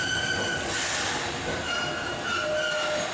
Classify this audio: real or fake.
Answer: real